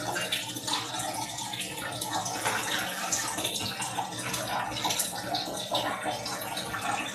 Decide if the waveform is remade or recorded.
recorded